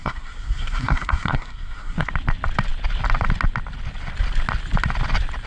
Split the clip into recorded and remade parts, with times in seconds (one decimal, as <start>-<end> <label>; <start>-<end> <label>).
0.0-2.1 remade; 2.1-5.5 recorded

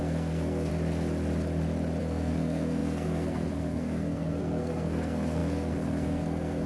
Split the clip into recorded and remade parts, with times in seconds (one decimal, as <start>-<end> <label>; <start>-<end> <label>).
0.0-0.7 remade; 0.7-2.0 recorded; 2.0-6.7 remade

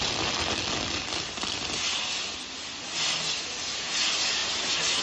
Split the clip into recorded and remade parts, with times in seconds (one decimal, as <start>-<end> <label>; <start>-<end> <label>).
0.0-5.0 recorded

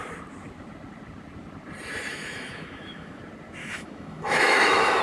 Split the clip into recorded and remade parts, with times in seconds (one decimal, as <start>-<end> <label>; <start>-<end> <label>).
0.0-2.1 recorded; 2.1-3.2 remade; 3.2-3.6 recorded; 3.6-5.0 remade